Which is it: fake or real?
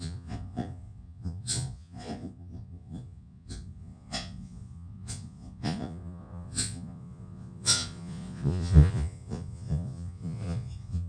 fake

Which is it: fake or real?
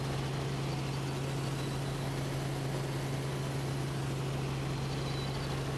real